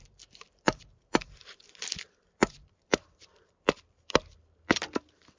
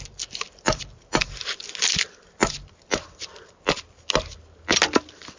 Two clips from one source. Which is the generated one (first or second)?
first